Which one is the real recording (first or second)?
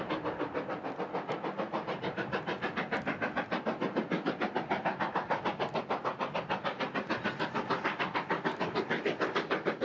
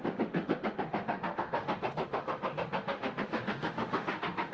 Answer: first